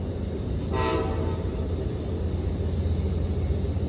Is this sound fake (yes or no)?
no